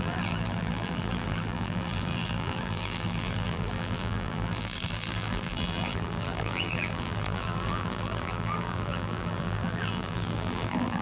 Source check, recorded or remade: remade